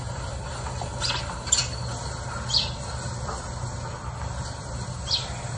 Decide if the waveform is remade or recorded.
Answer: recorded